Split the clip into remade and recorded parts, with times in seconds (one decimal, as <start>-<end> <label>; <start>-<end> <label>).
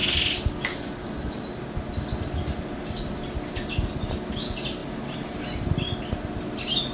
0.0-4.8 recorded; 4.8-5.4 remade; 5.4-6.9 recorded